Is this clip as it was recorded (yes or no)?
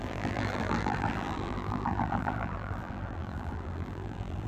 no